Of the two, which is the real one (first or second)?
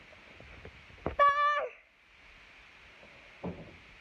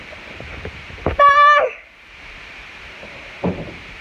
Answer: first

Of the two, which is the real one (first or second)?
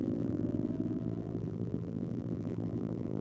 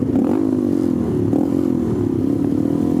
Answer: second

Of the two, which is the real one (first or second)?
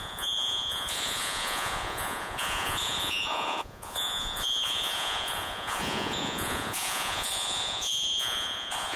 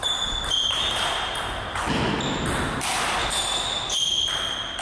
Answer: second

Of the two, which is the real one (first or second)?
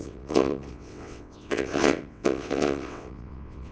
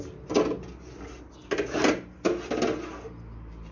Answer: second